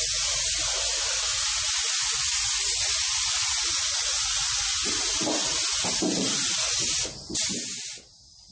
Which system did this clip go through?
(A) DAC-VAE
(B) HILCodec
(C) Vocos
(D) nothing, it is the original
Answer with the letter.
D